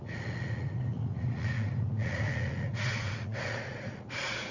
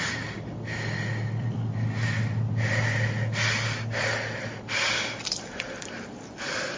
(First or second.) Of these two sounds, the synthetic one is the first